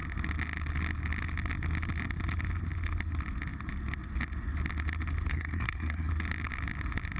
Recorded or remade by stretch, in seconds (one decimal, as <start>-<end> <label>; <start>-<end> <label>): 0.0-5.3 recorded; 5.3-6.1 remade; 6.1-7.2 recorded